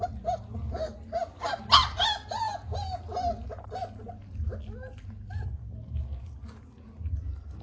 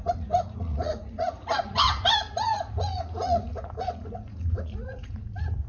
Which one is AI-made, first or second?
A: second